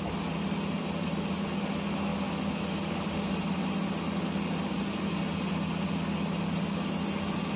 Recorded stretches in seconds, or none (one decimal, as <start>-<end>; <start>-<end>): 0.0-7.6